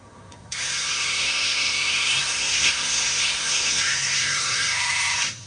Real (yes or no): no